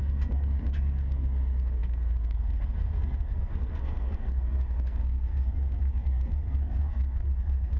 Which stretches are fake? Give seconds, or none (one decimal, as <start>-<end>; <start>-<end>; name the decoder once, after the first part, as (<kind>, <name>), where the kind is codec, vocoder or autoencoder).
0.0-7.8 (codec, SNAC)

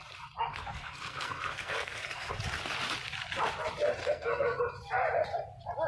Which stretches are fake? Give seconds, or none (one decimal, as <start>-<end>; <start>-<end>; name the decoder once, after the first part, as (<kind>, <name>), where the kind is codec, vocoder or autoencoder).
0.5-2.3 (codec, SNAC); 4.0-4.6

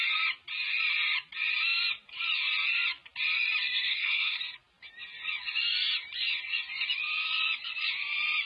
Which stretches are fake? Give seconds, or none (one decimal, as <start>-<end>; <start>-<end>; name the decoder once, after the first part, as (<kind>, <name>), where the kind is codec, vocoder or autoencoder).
3.9-4.4 (codec, SNAC)